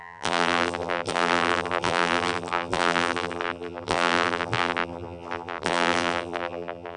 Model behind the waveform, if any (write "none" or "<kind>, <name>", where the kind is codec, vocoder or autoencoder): vocoder, BigVGAN v2